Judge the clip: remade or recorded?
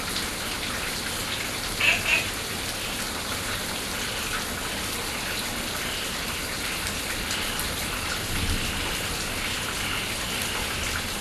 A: recorded